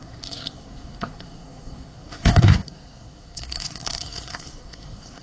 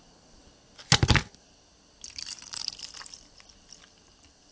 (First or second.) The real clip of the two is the second